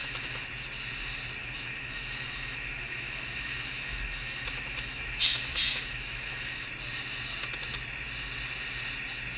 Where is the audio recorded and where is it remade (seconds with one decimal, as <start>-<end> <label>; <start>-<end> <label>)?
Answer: 0.0-0.5 remade; 0.5-1.4 recorded; 1.4-6.7 remade; 6.7-9.4 recorded